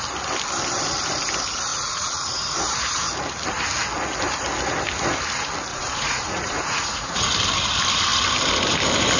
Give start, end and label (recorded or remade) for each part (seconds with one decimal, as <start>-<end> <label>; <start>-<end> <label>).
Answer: 0.0-1.7 recorded; 1.7-2.4 remade; 2.4-5.7 recorded; 5.7-7.3 remade; 7.3-9.2 recorded